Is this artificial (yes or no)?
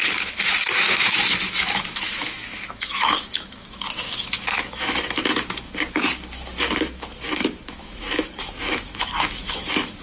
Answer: yes